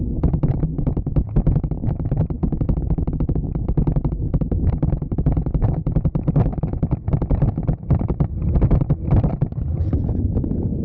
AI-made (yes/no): no